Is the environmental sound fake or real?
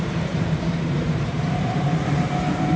fake